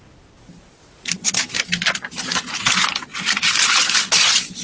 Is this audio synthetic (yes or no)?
no